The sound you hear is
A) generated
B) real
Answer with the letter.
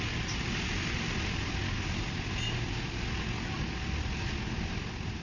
B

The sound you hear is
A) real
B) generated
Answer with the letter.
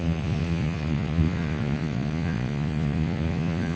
B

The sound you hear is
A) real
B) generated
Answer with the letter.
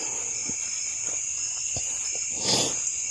A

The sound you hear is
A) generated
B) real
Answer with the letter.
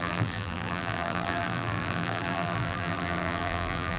A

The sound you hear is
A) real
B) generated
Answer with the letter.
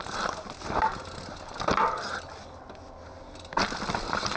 A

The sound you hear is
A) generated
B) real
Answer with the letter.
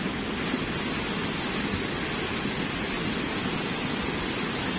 B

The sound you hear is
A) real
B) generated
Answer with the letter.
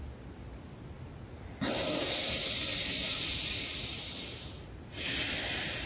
A